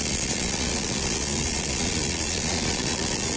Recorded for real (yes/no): no